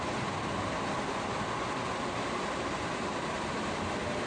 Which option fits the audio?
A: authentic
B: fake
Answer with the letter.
A